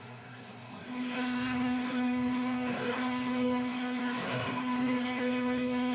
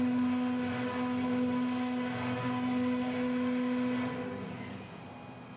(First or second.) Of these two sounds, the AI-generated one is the first